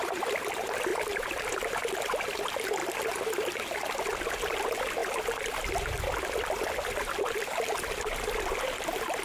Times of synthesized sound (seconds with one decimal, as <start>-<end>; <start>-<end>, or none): none